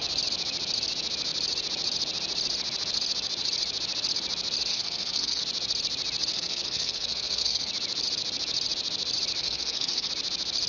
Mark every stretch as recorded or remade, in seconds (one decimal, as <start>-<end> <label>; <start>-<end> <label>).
0.0-4.7 recorded; 4.7-5.4 remade; 5.4-6.3 recorded; 6.3-7.7 remade; 7.7-9.4 recorded; 9.4-10.1 remade; 10.1-10.7 recorded